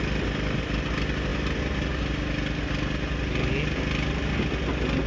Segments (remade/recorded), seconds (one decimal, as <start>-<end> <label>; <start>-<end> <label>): 0.0-5.1 recorded